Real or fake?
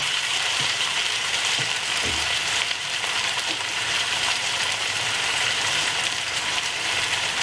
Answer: fake